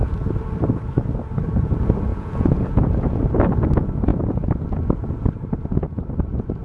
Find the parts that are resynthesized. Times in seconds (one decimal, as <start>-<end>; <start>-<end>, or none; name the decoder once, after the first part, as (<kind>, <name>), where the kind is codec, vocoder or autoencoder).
2.1-3.2 (vocoder, Vocos)